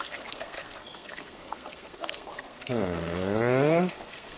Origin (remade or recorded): remade